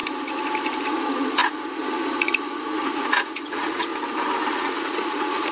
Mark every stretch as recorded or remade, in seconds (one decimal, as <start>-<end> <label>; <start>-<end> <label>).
0.0-0.8 recorded; 0.8-3.9 remade; 3.9-4.5 recorded; 4.5-5.5 remade